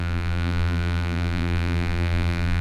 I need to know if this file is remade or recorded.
remade